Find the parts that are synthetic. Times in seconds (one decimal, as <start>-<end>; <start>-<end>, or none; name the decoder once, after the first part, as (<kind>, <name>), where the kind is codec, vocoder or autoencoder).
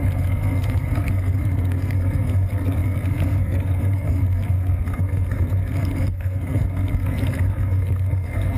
0.0-8.6 (codec, SNAC)